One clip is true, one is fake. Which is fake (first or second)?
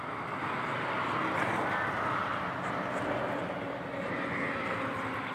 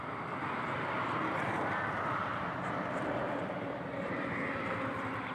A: second